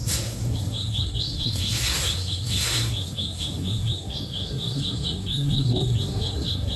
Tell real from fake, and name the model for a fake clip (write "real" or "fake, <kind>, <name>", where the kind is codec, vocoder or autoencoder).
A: fake, codec, SNAC